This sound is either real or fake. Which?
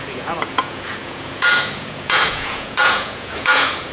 fake